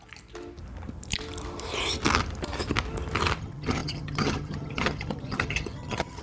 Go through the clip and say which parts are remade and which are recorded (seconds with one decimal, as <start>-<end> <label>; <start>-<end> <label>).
0.0-3.4 recorded; 3.4-6.2 remade